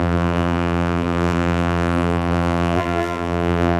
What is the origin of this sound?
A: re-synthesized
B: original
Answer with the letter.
A